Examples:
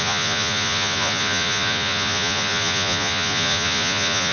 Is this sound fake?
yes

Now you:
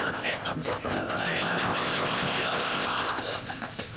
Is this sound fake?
yes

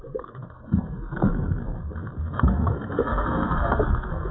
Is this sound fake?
yes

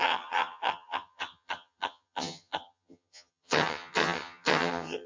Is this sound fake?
yes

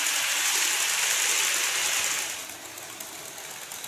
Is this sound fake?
no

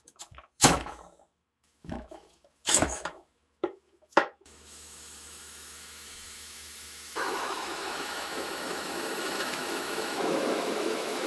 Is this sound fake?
yes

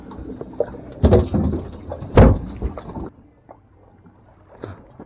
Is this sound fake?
no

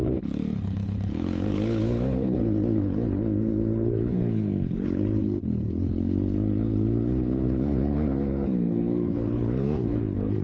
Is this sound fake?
yes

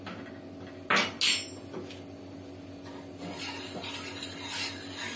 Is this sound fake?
no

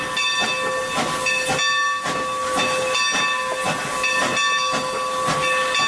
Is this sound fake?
no